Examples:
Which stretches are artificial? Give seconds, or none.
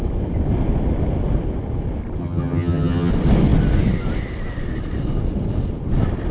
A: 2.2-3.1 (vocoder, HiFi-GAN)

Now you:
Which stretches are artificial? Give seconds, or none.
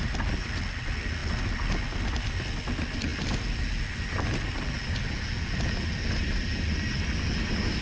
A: none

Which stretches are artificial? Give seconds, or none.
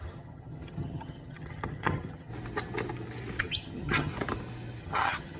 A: 0.0-2.3 (vocoder, HiFi-GAN); 3.4-4.1; 4.8-5.4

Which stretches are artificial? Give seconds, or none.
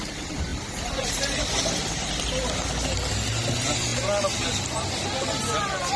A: none